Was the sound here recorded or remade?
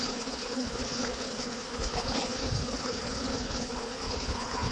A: remade